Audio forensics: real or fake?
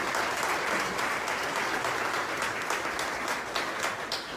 real